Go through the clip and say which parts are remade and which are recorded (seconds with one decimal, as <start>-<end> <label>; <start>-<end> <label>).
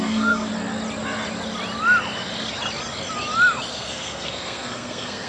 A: 0.0-0.5 remade; 0.5-3.7 recorded; 3.7-5.3 remade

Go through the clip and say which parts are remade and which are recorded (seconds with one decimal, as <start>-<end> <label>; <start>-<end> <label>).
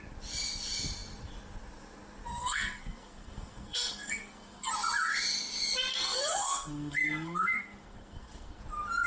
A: 0.0-2.3 recorded; 2.3-4.7 remade; 4.7-5.9 recorded; 5.9-8.6 remade; 8.6-9.1 recorded